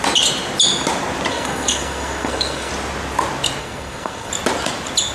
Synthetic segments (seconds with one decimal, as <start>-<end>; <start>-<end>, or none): 1.3-2.7; 3.6-4.3